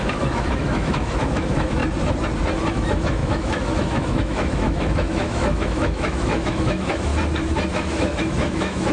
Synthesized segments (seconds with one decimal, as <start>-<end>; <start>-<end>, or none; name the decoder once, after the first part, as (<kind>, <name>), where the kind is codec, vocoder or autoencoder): 0.0-1.8 (autoencoder, DAC-VAE); 2.7-7.1; 7.7-8.9